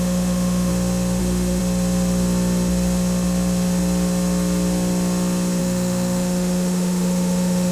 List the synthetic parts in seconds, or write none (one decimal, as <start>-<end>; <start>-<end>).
0.0-0.7; 1.2-1.6; 5.6-7.7